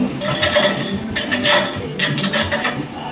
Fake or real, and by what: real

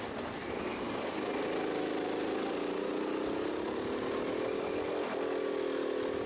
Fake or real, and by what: real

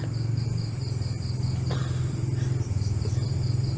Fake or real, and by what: real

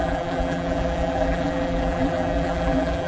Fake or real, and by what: fake, vocoder, BigVGAN v2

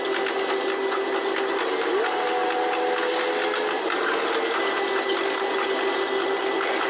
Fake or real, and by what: real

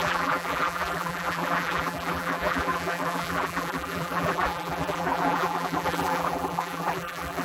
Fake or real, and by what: fake, vocoder, BigVGAN v2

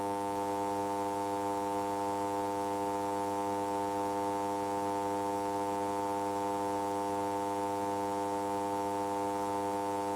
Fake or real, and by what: real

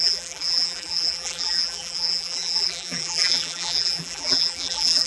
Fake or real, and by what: fake, vocoder, BigVGAN v2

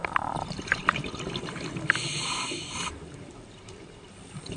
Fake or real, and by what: fake, vocoder, BigVGAN v2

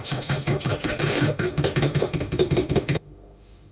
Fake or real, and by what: fake, autoencoder, DAC-VAE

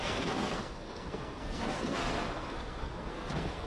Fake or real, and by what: fake, codec, SNAC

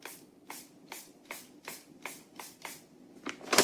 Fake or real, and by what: real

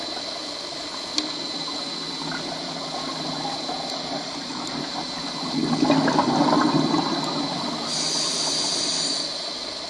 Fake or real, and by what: real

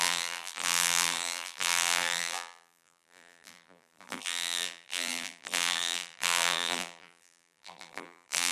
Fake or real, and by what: fake, vocoder, BigVGAN v2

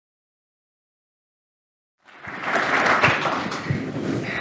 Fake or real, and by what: real